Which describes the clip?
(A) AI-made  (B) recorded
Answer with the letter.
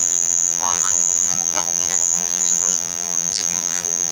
A